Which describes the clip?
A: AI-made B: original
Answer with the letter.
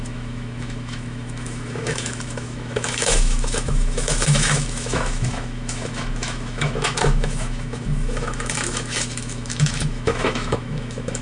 A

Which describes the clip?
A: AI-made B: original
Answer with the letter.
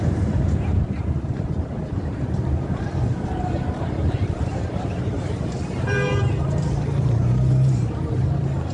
A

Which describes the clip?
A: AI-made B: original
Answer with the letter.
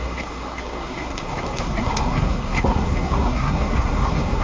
A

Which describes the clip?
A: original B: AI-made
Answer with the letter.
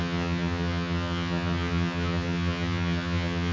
B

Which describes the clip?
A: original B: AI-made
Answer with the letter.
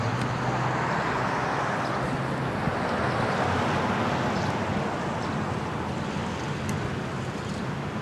A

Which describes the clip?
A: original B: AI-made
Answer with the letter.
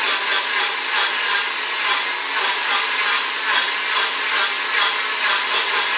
A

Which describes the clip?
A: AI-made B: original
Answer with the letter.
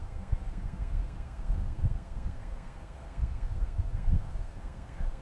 A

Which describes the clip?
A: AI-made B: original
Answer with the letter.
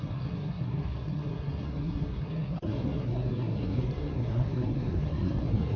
A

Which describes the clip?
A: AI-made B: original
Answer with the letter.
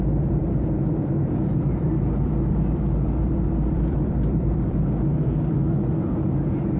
A